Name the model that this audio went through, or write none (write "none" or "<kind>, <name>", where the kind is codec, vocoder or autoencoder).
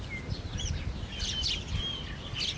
none